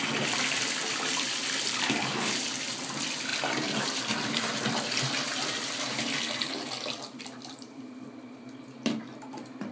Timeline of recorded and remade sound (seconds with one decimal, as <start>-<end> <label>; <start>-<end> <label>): 0.0-9.7 remade